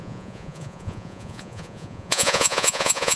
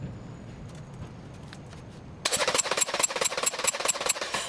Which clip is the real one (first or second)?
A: second